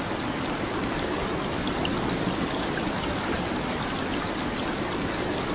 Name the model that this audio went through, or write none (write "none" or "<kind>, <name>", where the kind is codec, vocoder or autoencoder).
none